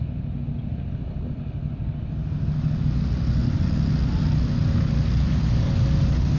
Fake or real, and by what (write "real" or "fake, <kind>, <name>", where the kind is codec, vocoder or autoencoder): real